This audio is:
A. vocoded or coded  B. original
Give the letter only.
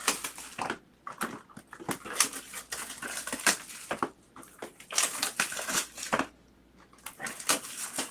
B